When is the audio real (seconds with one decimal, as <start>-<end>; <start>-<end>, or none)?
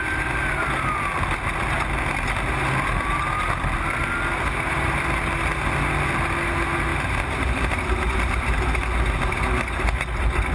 0.0-6.9; 7.7-10.5